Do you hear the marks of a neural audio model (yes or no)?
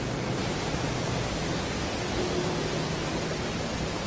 no